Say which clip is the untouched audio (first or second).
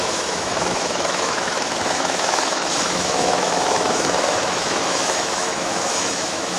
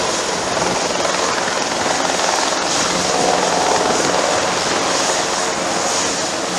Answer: second